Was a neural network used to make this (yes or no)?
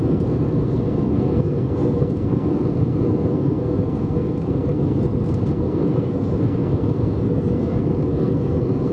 yes